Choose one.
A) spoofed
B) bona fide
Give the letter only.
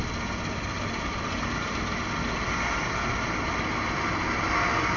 B